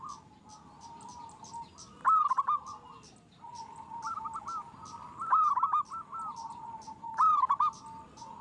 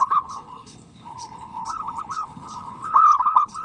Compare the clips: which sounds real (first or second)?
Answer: first